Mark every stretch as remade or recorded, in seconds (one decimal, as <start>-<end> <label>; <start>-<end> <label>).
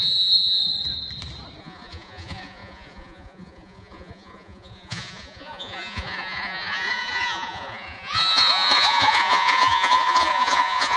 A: 0.0-0.6 remade; 0.6-1.6 recorded; 1.6-11.0 remade